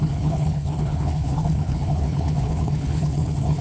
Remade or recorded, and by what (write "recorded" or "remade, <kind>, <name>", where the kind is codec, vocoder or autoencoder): remade, codec, HILCodec